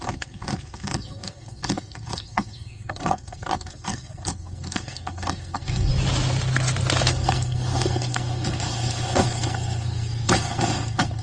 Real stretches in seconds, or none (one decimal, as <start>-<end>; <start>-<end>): 5.9-7.1